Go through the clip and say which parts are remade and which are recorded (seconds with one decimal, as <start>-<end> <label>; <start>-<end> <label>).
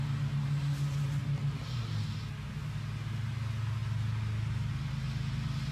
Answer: 0.0-5.7 recorded